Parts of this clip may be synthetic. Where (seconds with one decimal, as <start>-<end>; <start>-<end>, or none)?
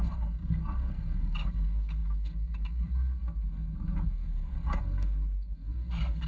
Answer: 0.0-6.3